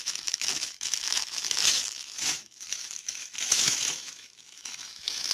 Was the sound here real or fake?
fake